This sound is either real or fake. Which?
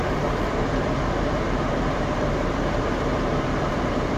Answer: fake